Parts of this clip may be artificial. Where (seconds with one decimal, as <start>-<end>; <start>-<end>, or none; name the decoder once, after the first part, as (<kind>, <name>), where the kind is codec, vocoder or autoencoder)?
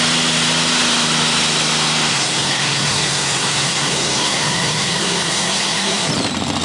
2.1-6.1 (codec, SNAC)